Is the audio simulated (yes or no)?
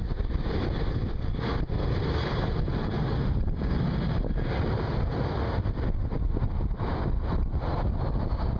no